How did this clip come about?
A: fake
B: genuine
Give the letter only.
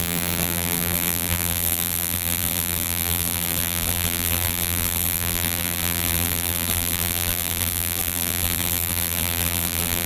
A